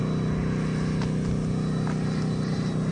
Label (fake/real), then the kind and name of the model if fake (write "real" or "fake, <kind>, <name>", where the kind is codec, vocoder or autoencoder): real